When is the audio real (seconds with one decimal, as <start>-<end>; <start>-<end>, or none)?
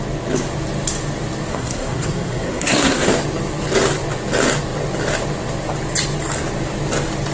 0.0-1.5; 3.1-7.3